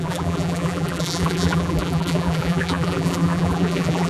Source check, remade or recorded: remade